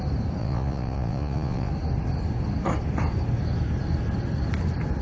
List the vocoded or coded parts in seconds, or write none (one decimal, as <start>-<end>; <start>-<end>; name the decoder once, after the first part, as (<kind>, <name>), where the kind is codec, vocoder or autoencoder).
0.4-1.7 (vocoder, Vocos)